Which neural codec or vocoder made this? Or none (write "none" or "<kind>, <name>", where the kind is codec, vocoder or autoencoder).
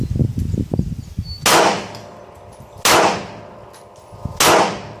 none